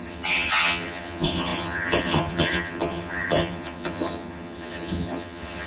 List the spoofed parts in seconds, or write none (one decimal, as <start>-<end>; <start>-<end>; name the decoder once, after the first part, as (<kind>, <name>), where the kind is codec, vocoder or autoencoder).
0.0-5.7 (vocoder, HiFi-GAN)